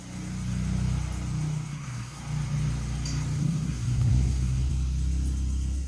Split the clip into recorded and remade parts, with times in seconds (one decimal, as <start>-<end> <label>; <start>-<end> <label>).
0.0-1.7 recorded; 1.7-2.2 remade; 2.2-3.4 recorded; 3.4-4.7 remade; 4.7-5.9 recorded